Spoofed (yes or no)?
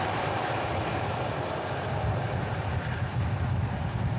no